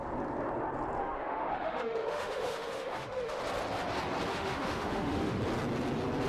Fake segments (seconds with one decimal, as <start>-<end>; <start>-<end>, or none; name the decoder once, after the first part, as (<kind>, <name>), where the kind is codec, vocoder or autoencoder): 1.0-3.4 (autoencoder, DAC-VAE); 4.3-5.4

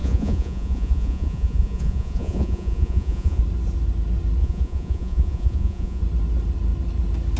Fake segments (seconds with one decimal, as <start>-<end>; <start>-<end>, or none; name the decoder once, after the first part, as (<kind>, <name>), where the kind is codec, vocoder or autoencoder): 0.0-3.4 (vocoder, Vocos); 4.4-6.0

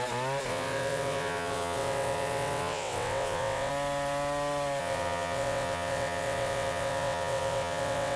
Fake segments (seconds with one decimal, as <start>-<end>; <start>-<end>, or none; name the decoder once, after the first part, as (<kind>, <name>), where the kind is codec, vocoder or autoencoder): 0.5-3.7 (vocoder, WaveNeXt); 4.8-8.2